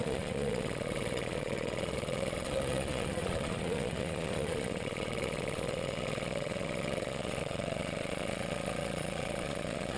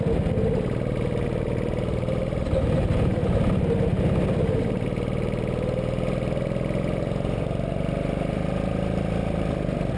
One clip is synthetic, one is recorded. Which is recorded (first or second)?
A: second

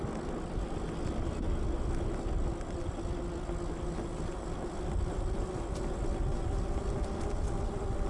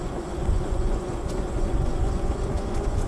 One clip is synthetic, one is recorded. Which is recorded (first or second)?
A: first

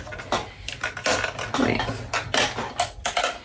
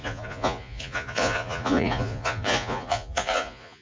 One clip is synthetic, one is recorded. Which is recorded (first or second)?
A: first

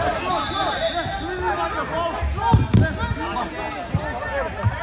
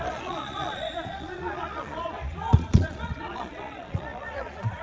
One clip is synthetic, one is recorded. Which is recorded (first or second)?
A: first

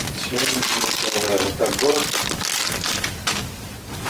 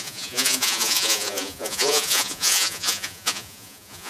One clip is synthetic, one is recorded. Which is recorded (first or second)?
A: first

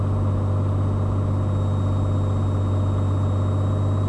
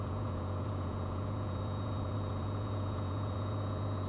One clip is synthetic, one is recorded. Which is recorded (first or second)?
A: first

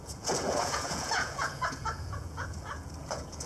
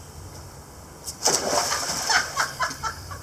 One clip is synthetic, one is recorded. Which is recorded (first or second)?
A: second